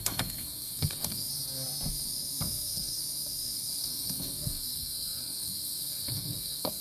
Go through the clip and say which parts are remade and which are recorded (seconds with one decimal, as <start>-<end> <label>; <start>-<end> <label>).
0.0-1.3 remade; 1.3-1.9 recorded; 1.9-6.8 remade